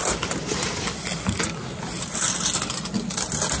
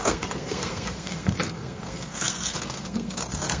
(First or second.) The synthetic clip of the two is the second